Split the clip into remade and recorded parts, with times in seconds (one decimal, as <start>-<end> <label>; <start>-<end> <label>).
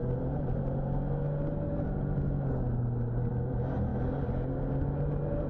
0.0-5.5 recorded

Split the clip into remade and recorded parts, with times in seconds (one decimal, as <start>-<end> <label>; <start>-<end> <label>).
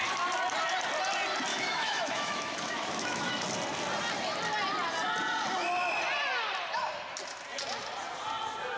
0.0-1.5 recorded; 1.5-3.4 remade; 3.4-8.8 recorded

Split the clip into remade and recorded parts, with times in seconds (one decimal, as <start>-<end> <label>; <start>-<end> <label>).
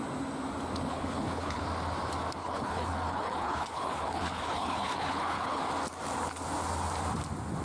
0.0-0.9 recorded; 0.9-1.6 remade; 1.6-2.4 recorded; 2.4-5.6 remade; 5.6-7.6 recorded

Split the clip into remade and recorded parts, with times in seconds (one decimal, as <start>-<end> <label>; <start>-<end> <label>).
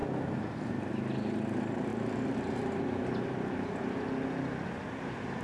0.0-5.4 recorded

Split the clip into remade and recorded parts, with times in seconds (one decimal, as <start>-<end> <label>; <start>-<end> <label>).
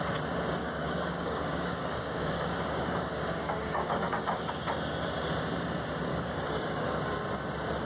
0.0-0.6 recorded; 0.6-4.5 remade; 4.5-6.1 recorded; 6.1-7.0 remade; 7.0-7.9 recorded